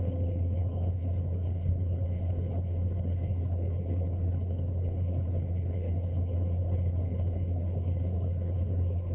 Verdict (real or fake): fake